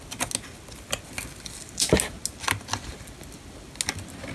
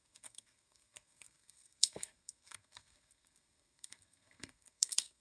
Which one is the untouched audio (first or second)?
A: first